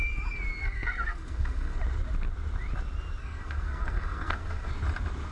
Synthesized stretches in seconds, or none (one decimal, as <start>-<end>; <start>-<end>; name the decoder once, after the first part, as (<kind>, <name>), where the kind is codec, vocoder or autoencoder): 0.6-1.8 (codec, SNAC); 3.2-4.7